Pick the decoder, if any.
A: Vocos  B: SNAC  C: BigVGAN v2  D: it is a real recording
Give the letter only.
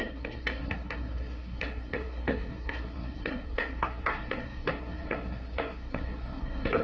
B